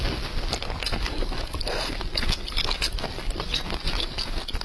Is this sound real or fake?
real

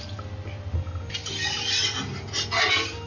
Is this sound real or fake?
real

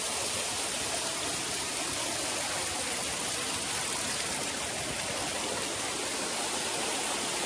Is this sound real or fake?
real